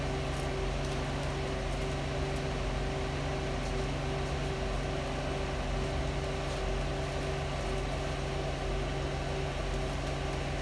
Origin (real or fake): real